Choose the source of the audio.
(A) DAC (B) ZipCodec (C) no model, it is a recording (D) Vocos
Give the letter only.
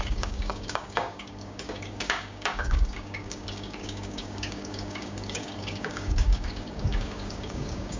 A